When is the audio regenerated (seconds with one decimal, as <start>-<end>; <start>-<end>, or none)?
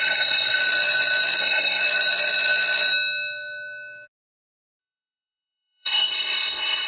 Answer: 0.0-0.6; 1.4-1.8; 4.8-6.9